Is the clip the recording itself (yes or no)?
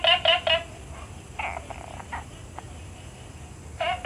yes